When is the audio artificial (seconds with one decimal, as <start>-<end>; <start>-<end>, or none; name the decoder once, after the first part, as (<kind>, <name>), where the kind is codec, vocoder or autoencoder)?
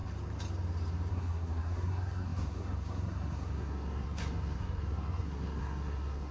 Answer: 1.1-6.3 (codec, SNAC)